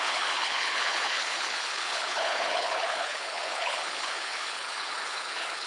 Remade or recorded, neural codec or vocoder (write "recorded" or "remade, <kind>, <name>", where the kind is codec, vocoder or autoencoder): remade, codec, HILCodec